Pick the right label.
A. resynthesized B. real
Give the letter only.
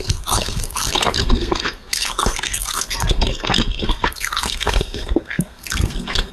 A